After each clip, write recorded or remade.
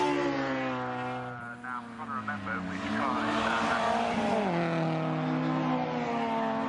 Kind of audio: recorded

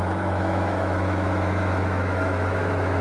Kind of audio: remade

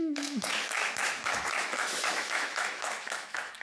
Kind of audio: remade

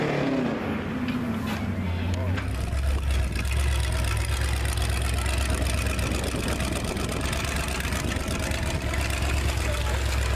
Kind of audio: recorded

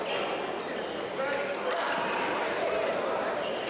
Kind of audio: recorded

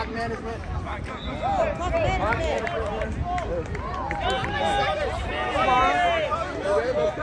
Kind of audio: recorded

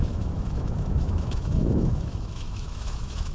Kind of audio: remade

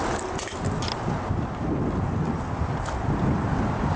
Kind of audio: recorded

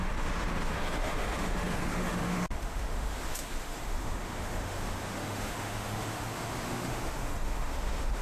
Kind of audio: remade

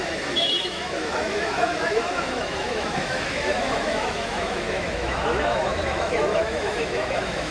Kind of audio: remade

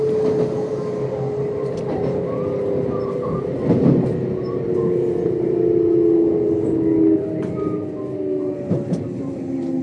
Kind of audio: recorded